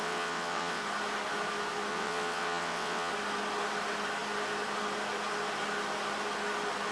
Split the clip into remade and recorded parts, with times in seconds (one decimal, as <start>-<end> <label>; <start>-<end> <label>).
0.0-0.8 remade; 0.8-1.9 recorded; 1.9-3.1 remade; 3.1-6.9 recorded